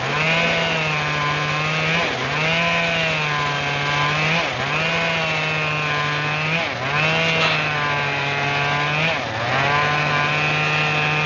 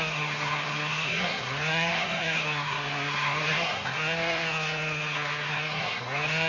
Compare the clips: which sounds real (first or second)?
first